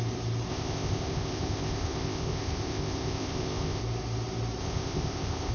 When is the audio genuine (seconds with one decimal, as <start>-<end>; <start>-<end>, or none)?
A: 0.0-0.5; 3.8-4.6